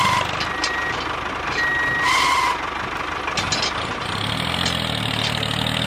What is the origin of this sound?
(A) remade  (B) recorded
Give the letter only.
B